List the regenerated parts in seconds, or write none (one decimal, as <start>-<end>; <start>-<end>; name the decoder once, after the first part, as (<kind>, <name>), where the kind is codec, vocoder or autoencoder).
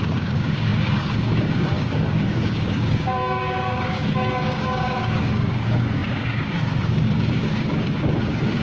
0.0-8.6 (codec, DAC)